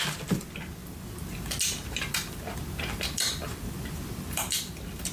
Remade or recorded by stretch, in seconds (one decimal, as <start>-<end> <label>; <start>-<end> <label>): 0.0-5.1 recorded